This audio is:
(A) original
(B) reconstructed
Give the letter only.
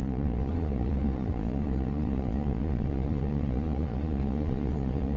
B